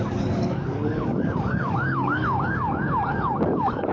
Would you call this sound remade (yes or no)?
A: yes